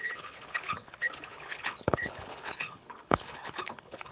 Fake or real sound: fake